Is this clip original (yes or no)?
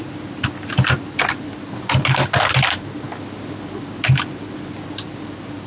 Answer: yes